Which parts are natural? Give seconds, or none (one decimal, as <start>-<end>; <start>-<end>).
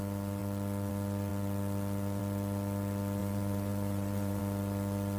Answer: 0.0-3.2; 4.4-5.2